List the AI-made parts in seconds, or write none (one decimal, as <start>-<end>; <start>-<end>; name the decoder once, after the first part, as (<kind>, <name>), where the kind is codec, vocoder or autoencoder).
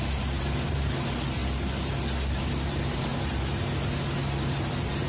0.0-1.4 (vocoder, BigVGAN v2); 2.7-3.1; 4.5-5.1